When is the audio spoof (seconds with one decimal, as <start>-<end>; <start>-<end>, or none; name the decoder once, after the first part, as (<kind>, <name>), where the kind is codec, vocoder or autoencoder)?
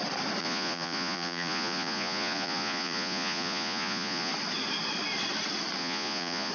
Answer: 0.4-4.3 (vocoder, Vocos); 5.8-6.5